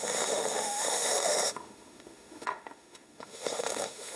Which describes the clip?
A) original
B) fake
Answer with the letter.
B